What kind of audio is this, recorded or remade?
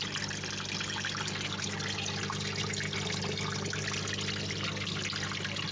recorded